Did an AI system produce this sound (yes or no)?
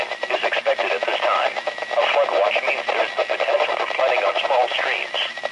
no